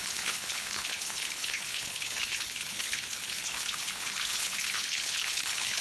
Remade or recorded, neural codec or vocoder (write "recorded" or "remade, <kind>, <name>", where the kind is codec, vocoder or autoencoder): remade, codec, HILCodec